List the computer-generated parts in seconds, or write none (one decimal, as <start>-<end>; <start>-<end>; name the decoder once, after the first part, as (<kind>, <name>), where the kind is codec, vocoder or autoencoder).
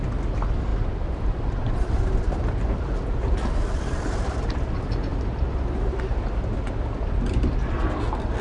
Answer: 0.7-4.5 (vocoder, BigVGAN v2)